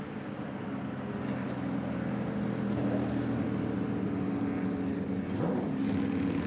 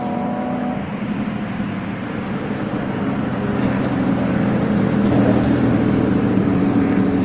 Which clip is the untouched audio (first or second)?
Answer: first